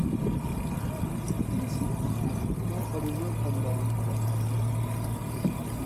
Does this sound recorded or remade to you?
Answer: recorded